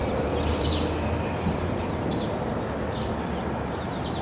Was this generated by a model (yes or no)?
no